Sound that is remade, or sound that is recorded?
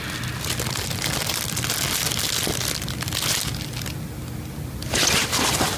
recorded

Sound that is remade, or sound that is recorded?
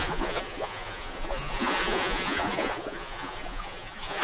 remade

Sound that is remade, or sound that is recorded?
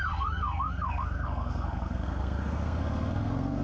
remade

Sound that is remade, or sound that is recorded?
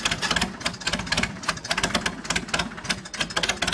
recorded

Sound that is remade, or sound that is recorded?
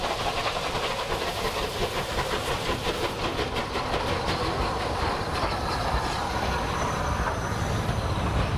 remade